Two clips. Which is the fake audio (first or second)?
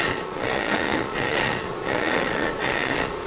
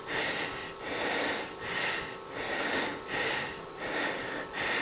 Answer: first